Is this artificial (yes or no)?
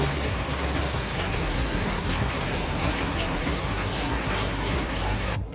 yes